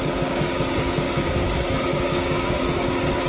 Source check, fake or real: fake